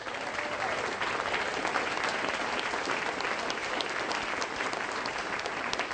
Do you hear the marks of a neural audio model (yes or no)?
no